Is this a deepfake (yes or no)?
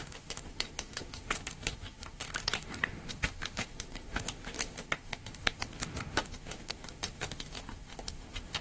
yes